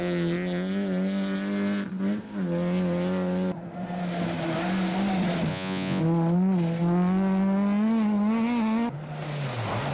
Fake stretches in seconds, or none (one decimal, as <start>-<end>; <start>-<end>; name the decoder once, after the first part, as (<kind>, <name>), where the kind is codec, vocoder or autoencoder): 5.5-6.0 (vocoder, Vocos)